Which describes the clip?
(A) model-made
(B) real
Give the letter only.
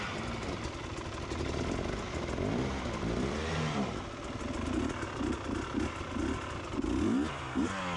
B